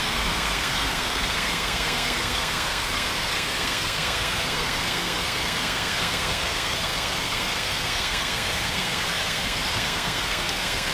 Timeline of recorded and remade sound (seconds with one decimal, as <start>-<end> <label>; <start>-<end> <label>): 0.0-10.9 remade